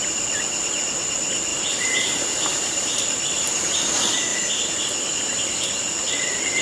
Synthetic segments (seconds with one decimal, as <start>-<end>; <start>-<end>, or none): 1.5-3.9